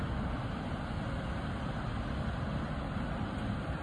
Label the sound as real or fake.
real